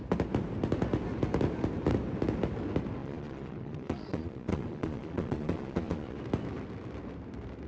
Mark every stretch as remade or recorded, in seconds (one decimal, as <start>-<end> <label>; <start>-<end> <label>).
0.0-3.0 recorded; 3.0-6.2 remade; 6.2-7.7 recorded